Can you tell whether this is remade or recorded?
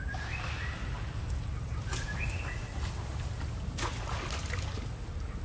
recorded